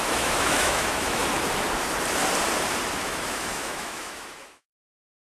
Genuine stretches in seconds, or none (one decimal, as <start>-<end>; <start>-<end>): 1.2-3.0